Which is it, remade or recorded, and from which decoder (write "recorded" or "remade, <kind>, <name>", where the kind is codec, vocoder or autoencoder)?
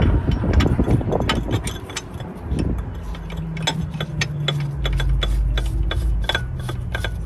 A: recorded